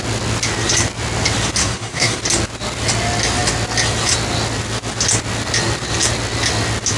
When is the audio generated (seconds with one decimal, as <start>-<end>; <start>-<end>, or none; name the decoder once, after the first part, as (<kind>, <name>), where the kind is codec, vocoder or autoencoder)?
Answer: 1.6-2.2 (codec, SNAC)